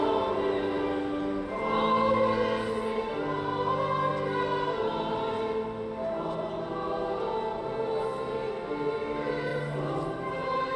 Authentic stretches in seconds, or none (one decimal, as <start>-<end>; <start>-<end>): 0.0-9.5